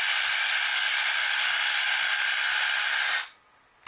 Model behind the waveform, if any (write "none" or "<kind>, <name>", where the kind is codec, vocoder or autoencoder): none